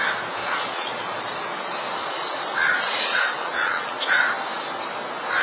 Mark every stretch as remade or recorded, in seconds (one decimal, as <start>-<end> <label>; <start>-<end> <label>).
0.0-0.4 recorded; 0.4-1.0 remade; 1.0-3.4 recorded; 3.4-4.0 remade; 4.0-5.4 recorded